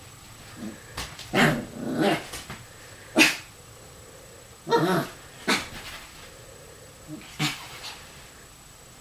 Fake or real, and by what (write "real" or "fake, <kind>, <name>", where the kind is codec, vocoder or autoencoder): fake, vocoder, BigVGAN v2